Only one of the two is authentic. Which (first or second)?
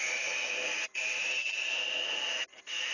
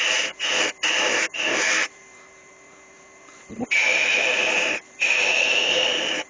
first